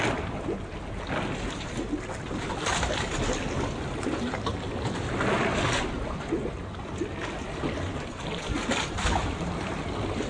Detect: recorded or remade recorded